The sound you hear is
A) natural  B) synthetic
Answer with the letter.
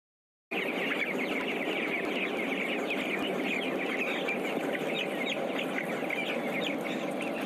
A